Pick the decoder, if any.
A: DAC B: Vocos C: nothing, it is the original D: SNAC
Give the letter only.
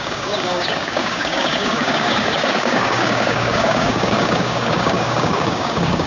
A